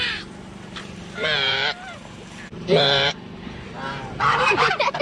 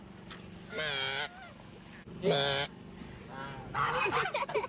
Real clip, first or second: second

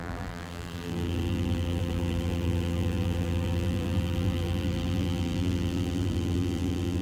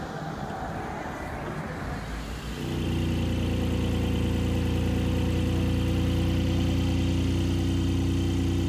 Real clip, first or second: second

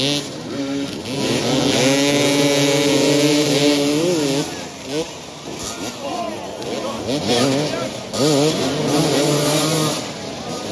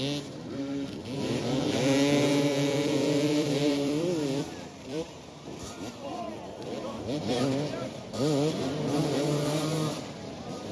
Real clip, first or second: first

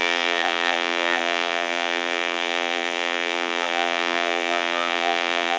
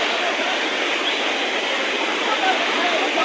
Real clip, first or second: second